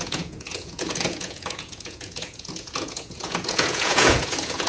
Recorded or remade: remade